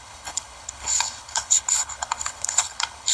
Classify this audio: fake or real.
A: fake